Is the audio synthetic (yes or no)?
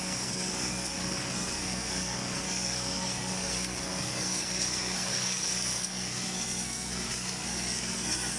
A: yes